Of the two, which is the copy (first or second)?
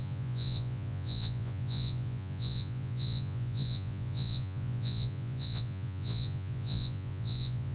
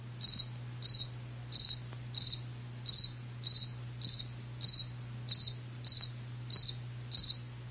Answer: first